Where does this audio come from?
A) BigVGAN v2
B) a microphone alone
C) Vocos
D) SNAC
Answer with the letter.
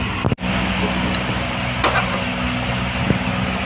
B